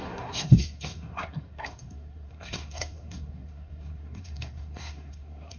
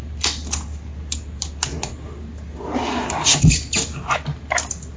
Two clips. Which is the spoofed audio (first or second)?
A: first